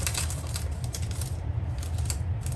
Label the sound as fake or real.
fake